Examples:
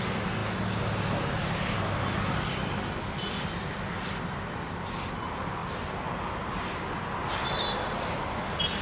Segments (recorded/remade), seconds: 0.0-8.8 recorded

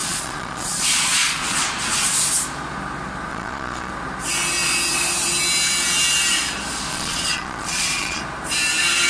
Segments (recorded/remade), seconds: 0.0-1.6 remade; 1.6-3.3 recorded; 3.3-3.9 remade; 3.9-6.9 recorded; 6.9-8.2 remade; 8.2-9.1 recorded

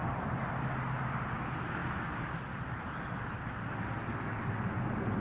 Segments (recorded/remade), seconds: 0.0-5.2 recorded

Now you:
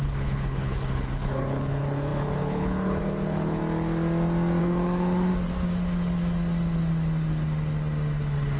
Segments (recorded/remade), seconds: 0.0-3.6 remade; 3.6-4.6 recorded; 4.6-5.3 remade; 5.3-8.6 recorded

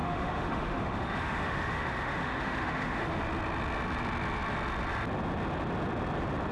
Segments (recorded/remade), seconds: 0.0-3.2 remade; 3.2-6.5 recorded

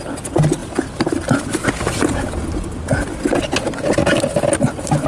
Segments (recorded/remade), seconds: 0.0-5.1 recorded